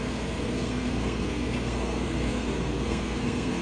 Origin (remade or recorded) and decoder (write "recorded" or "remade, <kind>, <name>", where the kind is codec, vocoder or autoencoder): remade, codec, SNAC